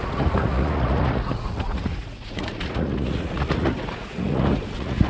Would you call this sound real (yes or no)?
no